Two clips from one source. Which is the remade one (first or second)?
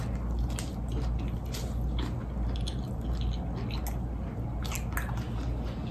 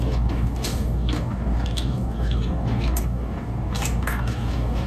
second